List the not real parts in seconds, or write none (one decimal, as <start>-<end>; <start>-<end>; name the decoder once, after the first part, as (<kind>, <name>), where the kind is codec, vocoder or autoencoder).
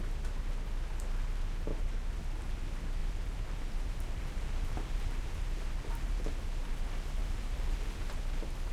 1.7-2.2 (vocoder, BigVGAN v2); 3.0-6.3; 7.2-8.2